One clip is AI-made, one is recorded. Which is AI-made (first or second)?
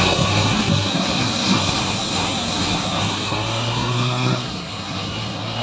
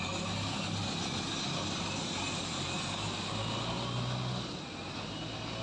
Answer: first